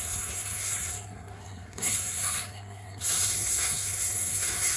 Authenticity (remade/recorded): remade